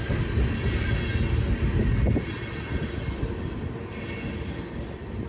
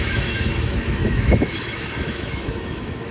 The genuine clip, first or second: first